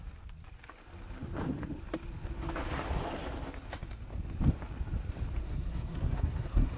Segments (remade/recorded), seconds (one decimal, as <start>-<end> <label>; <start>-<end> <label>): 0.0-5.4 recorded; 5.4-6.8 remade